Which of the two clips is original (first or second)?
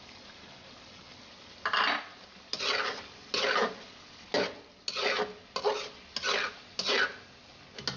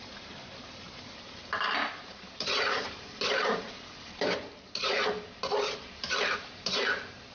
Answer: first